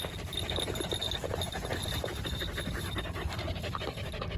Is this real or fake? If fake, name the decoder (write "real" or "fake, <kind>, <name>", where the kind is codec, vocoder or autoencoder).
real